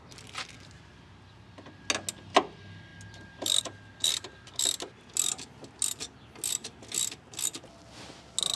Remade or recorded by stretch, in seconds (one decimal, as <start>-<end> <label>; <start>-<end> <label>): 0.0-8.6 recorded